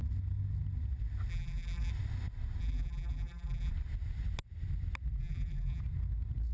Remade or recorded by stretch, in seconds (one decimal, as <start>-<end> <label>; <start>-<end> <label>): 0.0-1.3 recorded; 1.3-1.9 remade; 1.9-2.6 recorded; 2.6-3.7 remade; 3.7-5.2 recorded; 5.2-5.8 remade; 5.8-6.5 recorded